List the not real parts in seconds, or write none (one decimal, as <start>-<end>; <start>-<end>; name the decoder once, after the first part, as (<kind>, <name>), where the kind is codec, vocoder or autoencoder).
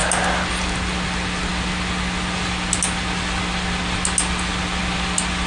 none